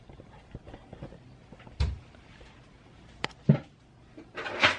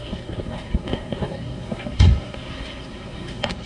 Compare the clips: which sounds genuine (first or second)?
first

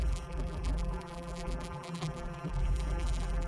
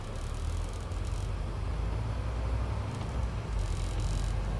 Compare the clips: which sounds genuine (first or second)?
second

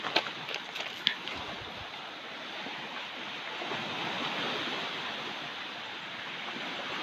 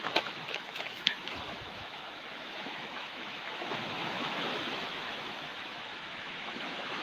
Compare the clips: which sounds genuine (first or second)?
first